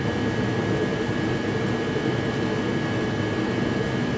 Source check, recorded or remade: recorded